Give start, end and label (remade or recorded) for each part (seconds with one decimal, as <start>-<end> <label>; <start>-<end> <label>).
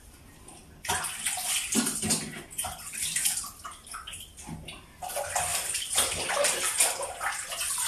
0.0-5.5 recorded; 5.5-7.2 remade; 7.2-7.9 recorded